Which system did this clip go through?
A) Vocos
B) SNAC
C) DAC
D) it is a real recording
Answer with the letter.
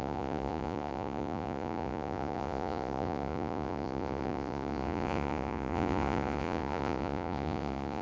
A